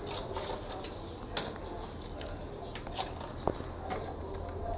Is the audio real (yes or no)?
yes